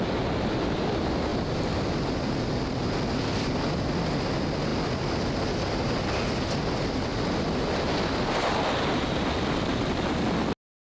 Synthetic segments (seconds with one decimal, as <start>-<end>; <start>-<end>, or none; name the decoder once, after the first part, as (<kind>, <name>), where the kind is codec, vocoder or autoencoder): 1.3-1.8 (vocoder, BigVGAN v2)